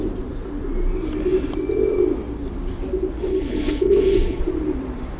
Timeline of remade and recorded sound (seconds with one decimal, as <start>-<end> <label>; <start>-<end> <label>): 0.0-3.3 recorded; 3.3-4.4 remade; 4.4-5.2 recorded